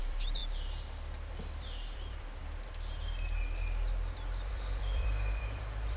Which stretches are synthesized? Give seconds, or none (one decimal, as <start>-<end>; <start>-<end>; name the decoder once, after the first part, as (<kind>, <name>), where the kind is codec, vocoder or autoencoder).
0.0-0.4 (vocoder, BigVGAN v2); 1.3-2.4; 4.5-6.0